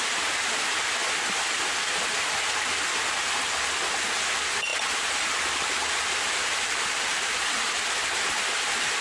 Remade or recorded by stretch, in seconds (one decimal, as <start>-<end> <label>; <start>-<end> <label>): 0.0-9.0 recorded